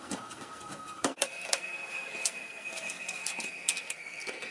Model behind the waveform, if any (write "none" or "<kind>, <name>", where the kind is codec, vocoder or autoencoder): codec, SNAC